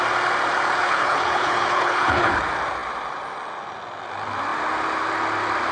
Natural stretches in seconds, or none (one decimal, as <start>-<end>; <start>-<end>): 0.0-0.8; 2.3-5.7